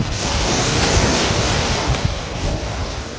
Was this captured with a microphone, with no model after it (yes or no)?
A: no